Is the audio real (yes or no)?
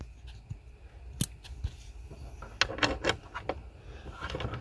yes